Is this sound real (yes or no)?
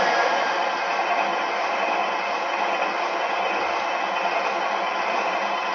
yes